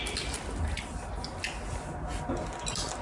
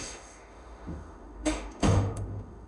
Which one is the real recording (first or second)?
first